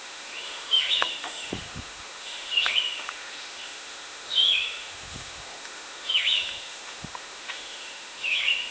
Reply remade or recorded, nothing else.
remade